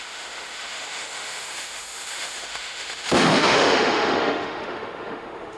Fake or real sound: fake